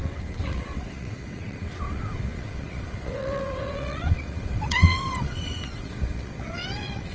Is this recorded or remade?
remade